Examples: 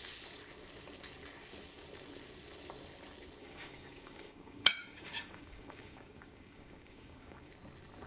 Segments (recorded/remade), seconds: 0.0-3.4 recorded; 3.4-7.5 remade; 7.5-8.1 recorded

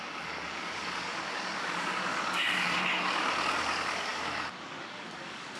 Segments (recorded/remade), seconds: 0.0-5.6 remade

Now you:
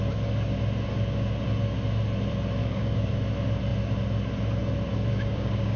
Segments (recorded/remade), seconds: 0.0-2.6 recorded; 2.6-3.1 remade; 3.1-5.1 recorded; 5.1-5.8 remade